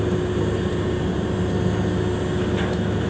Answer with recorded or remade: recorded